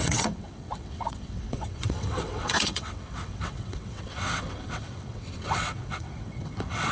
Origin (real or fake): fake